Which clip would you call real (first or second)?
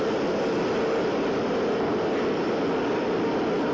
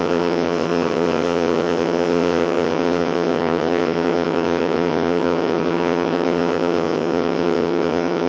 first